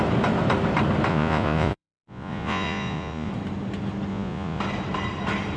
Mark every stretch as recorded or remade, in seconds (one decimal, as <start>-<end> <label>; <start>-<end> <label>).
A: 0.0-1.1 recorded; 1.1-3.3 remade; 3.3-4.1 recorded; 4.1-4.6 remade; 4.6-5.6 recorded